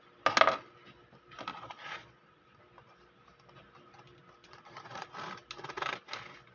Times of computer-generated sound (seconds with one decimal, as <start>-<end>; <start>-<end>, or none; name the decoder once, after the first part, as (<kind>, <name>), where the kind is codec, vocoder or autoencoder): 1.5-2.6 (vocoder, Vocos); 4.4-5.1